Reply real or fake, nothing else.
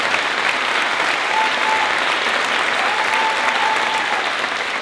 real